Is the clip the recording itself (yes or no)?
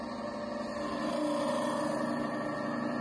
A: yes